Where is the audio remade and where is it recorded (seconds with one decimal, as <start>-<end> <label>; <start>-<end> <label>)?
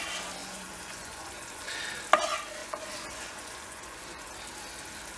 0.0-0.4 recorded; 0.4-1.8 remade; 1.8-2.6 recorded; 2.6-4.3 remade; 4.3-5.2 recorded